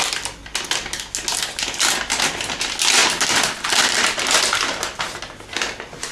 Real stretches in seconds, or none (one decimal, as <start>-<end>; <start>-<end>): 0.0-3.0; 5.2-6.1